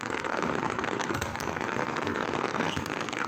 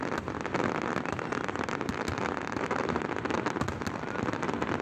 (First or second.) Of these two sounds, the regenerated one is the first